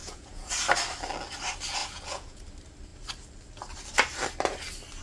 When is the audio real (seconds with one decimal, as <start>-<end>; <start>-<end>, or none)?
0.5-1.8; 2.4-5.0